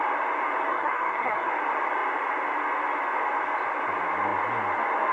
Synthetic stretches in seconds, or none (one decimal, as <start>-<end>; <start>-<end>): 0.7-1.5